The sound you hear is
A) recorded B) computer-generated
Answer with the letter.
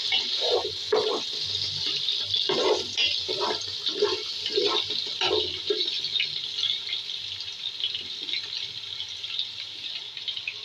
A